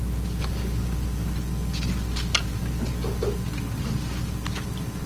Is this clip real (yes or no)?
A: yes